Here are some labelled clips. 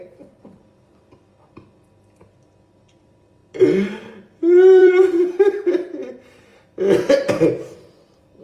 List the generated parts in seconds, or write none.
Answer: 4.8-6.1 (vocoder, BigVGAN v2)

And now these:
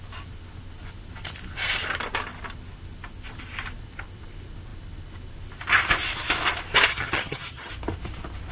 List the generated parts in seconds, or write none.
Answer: 6.9-7.7 (vocoder, HiFi-GAN)

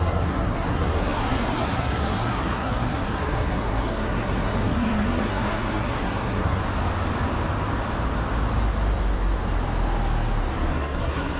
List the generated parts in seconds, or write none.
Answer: 0.0-6.6 (codec, SNAC); 10.7-11.4

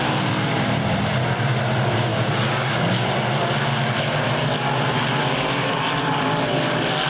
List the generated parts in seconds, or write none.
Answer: 2.1-2.8 (codec, DAC); 5.2-5.8

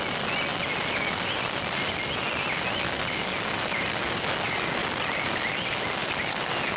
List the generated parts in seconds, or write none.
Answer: none

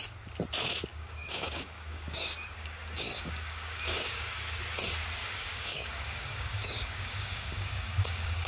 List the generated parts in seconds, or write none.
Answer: 0.9-4.4 (codec, DAC); 5.2-8.5

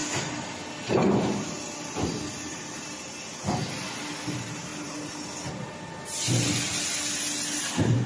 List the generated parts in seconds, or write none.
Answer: none

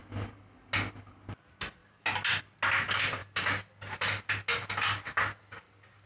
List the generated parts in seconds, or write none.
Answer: none